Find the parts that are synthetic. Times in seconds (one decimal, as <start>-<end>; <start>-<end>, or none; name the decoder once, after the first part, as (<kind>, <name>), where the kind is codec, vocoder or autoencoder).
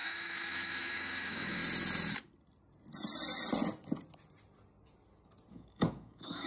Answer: 0.0-1.6 (autoencoder, DAC-VAE); 5.5-6.5